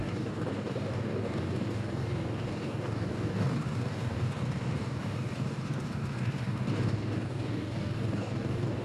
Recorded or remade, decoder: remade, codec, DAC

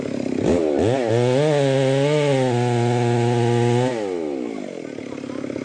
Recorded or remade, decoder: recorded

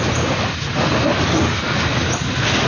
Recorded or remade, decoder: recorded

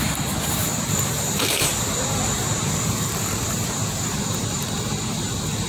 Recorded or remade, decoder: remade, vocoder, BigVGAN v2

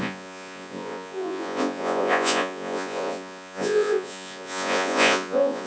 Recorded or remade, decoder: remade, vocoder, Vocos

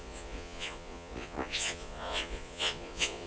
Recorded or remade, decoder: remade, vocoder, Vocos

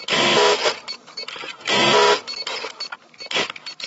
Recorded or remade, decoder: remade, vocoder, BigVGAN v2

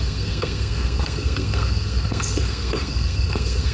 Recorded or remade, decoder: remade, codec, SNAC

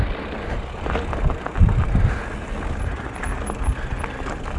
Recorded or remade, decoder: recorded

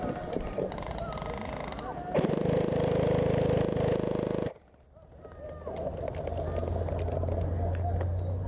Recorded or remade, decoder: recorded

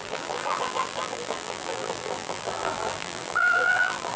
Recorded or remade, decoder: remade, vocoder, BigVGAN v2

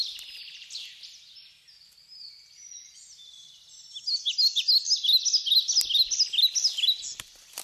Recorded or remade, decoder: recorded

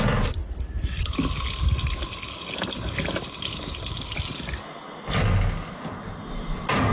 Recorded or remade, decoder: recorded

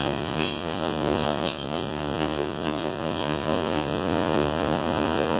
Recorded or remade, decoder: remade, vocoder, Vocos